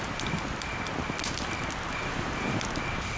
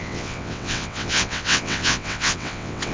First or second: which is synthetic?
second